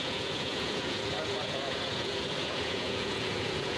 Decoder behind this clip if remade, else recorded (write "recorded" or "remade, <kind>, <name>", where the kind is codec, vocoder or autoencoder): remade, vocoder, Vocos